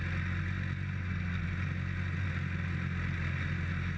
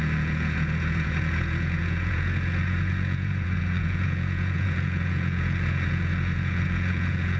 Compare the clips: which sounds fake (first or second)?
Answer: second